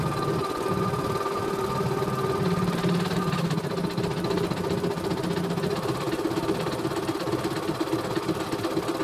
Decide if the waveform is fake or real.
real